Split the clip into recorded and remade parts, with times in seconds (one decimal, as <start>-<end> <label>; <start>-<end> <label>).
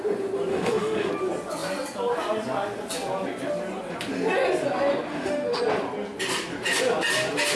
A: 0.0-0.5 recorded; 0.5-1.1 remade; 1.1-5.1 recorded; 5.1-5.6 remade; 5.6-7.6 recorded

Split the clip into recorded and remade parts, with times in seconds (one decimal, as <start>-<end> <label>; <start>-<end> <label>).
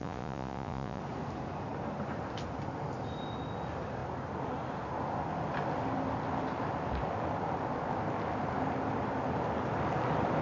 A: 0.0-1.0 remade; 1.0-10.4 recorded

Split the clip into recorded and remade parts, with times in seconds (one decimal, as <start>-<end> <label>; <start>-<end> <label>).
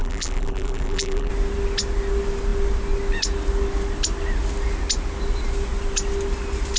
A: 0.0-1.3 remade; 1.3-6.8 recorded